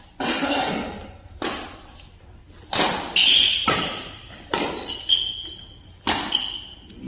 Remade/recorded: recorded